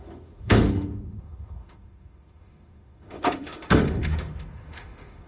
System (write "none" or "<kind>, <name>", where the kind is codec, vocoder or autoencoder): autoencoder, DAC-VAE